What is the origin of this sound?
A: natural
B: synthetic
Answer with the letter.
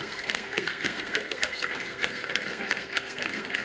B